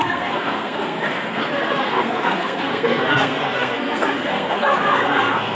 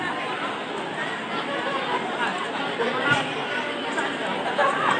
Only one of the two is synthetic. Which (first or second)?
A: first